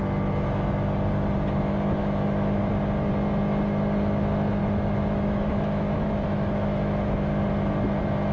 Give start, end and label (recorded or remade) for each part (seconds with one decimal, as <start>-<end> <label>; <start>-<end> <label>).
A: 0.0-2.0 recorded; 2.0-2.6 remade; 2.6-4.6 recorded; 4.6-7.3 remade; 7.3-8.3 recorded